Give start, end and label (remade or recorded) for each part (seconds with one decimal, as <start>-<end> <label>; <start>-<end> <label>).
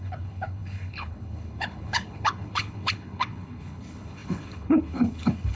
0.0-5.5 remade